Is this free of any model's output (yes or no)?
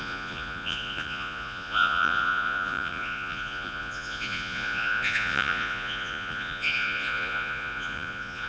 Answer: no